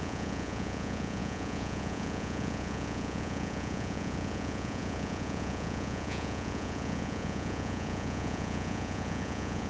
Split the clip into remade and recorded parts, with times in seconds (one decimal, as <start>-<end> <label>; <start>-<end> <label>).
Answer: 0.0-9.7 remade